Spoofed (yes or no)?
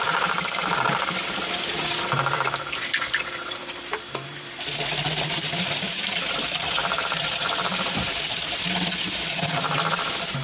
yes